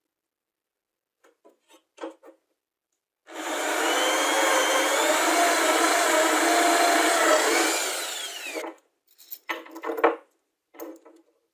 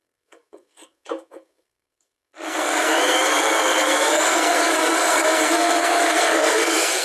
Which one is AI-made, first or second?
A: second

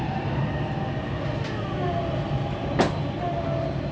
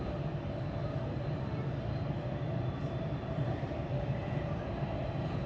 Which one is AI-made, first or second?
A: second